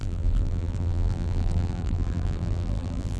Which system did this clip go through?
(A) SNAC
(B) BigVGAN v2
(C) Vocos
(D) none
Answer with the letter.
B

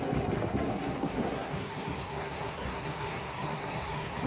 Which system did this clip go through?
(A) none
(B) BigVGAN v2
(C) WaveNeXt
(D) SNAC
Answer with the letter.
D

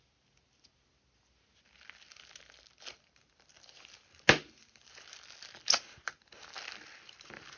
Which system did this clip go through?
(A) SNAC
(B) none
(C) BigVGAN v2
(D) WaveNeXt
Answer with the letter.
B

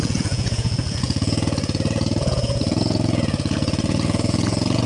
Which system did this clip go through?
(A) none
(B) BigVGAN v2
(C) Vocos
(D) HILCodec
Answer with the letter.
C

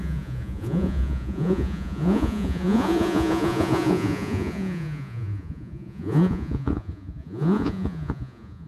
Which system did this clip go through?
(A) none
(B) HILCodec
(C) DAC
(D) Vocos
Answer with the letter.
D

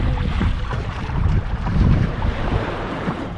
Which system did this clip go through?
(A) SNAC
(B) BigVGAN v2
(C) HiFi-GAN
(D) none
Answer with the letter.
B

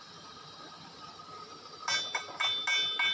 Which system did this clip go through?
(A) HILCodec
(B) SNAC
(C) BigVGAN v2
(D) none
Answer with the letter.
D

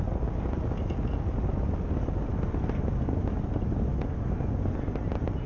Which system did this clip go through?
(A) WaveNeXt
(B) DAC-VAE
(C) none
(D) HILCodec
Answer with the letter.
C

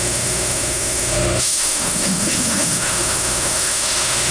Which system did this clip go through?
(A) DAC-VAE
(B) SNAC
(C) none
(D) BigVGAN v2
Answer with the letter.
A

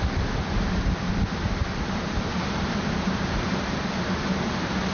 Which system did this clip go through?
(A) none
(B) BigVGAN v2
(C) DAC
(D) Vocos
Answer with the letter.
B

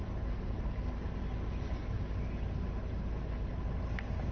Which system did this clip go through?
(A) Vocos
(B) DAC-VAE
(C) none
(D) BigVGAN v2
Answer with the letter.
C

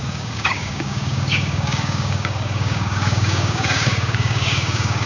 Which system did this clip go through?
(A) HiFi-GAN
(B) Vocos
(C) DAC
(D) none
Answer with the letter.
C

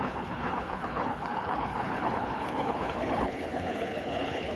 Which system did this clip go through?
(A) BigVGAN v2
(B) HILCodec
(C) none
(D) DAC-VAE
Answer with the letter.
B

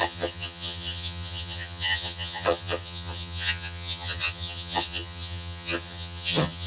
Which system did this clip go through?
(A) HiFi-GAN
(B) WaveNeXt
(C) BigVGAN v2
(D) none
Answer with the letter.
A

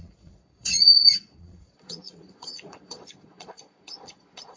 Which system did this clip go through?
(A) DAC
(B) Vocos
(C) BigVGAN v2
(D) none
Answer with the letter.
B